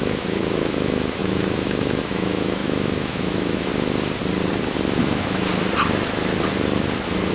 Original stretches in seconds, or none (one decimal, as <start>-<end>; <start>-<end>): 3.7-5.0; 5.5-7.3